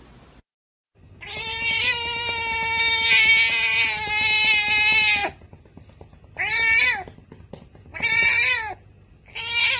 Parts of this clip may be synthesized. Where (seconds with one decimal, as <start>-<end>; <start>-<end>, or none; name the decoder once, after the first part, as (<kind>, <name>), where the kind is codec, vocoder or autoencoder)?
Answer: 1.5-2.3 (vocoder, BigVGAN v2); 7.9-8.7